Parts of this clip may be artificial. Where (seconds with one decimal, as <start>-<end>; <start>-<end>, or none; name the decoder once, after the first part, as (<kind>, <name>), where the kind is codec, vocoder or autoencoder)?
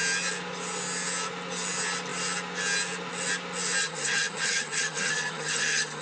3.8-6.0 (vocoder, HiFi-GAN)